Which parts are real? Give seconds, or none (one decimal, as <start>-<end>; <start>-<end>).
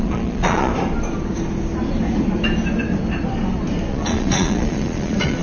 0.7-3.9